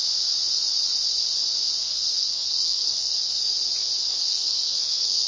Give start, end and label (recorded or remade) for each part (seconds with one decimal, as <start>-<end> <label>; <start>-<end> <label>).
0.0-1.8 recorded; 1.8-3.5 remade; 3.5-4.1 recorded; 4.1-5.3 remade